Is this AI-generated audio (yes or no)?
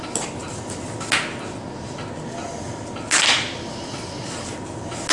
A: no